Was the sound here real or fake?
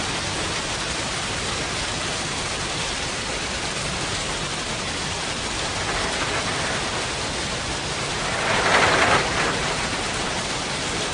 real